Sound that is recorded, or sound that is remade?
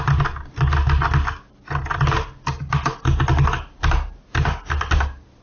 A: recorded